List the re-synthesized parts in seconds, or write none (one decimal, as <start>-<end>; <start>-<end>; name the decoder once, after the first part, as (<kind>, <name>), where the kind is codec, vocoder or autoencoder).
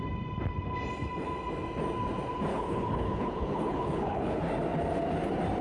2.5-4.4 (codec, HILCodec)